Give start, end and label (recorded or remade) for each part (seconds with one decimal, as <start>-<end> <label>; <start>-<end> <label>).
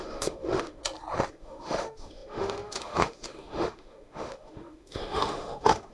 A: 0.0-0.8 remade; 0.8-1.3 recorded; 1.3-5.9 remade